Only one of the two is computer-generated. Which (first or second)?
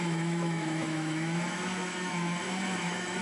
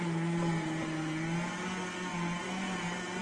first